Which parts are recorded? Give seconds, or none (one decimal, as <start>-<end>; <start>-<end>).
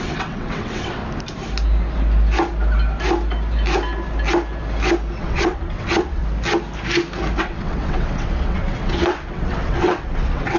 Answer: 1.0-5.2; 6.2-7.4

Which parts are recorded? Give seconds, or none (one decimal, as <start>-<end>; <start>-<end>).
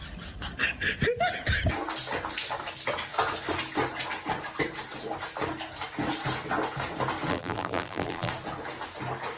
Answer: 0.0-7.3; 8.3-9.4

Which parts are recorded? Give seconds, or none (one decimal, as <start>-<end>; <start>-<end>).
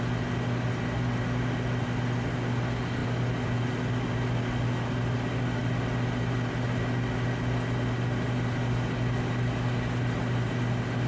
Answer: 0.0-11.1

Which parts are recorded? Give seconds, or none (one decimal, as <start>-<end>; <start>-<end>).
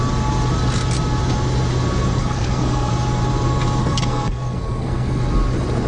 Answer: 0.0-2.2; 2.9-3.8; 5.2-5.9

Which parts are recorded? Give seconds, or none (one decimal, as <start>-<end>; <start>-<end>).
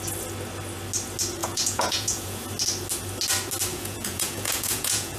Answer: 0.0-1.4; 2.5-3.7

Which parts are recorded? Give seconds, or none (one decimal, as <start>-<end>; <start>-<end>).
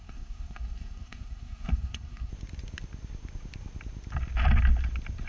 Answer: 2.3-5.3